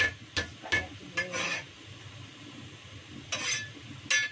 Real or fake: real